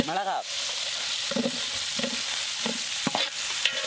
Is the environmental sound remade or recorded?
recorded